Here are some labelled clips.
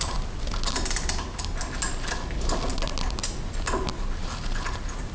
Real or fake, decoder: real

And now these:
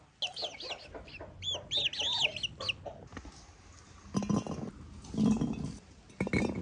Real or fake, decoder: real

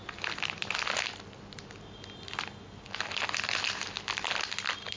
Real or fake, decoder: real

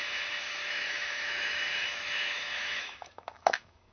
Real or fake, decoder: fake, autoencoder, DAC-VAE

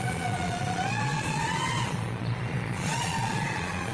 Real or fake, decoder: fake, vocoder, Vocos